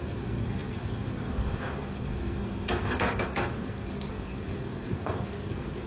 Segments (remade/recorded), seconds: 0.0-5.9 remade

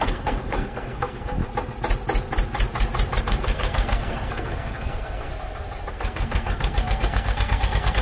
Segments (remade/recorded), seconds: 0.0-1.4 remade; 1.4-3.2 recorded; 3.2-5.3 remade; 5.3-5.9 recorded; 5.9-8.0 remade

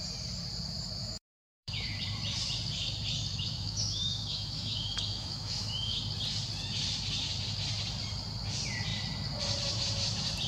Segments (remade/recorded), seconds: 0.0-1.0 recorded; 1.0-2.0 remade; 2.0-3.3 recorded; 3.3-6.0 remade; 6.0-10.5 recorded

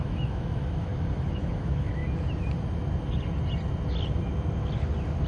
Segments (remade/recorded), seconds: 0.0-2.0 remade; 2.0-5.3 recorded

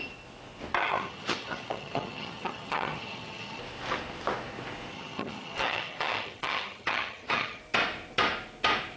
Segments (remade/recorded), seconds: 0.0-0.8 recorded; 0.8-3.6 remade; 3.6-4.9 recorded; 4.9-7.6 remade; 7.6-9.0 recorded

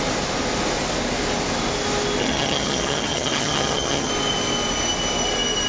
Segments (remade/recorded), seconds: 0.0-2.2 recorded; 2.2-4.1 remade; 4.1-5.7 recorded

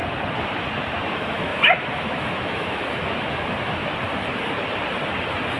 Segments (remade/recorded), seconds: 0.0-1.1 recorded; 1.1-3.8 remade; 3.8-5.6 recorded